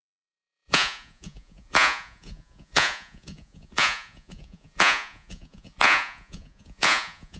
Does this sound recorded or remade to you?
remade